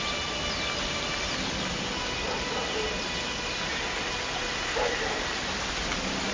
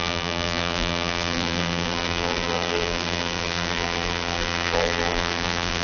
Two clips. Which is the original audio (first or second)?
first